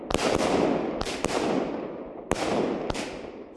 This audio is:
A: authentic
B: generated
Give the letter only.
A